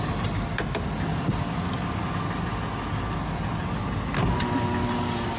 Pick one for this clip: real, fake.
real